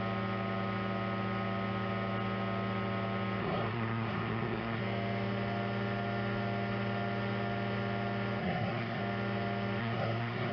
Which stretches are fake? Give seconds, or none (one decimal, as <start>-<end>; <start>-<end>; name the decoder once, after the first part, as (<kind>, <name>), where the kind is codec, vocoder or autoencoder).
3.4-4.8 (codec, SNAC); 8.4-9.0; 9.8-10.5